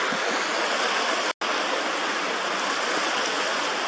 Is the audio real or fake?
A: real